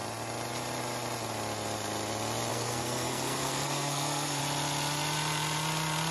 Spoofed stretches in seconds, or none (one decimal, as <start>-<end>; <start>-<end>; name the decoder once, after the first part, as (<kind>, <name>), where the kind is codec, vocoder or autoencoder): 2.5-4.4 (codec, SNAC)